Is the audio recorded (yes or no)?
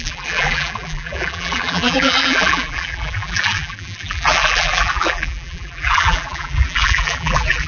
no